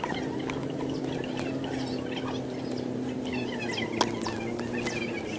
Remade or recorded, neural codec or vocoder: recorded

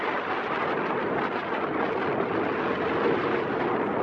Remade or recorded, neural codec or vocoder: recorded